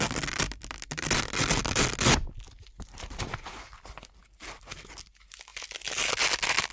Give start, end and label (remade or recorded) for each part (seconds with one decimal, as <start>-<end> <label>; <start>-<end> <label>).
0.0-6.7 recorded